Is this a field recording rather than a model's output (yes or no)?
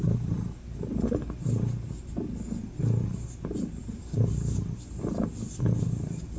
yes